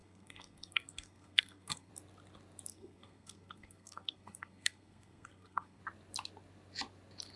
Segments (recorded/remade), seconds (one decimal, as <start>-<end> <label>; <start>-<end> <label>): 0.0-1.9 remade; 1.9-2.7 recorded; 2.7-5.8 remade; 5.8-7.4 recorded